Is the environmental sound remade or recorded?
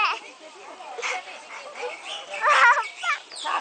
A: recorded